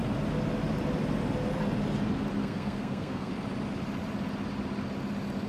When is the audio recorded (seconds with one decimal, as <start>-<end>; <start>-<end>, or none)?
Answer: 0.0-2.4; 3.3-5.5